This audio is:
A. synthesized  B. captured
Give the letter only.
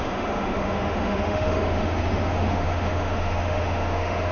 A